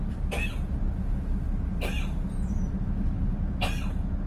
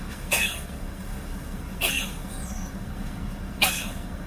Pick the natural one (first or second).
first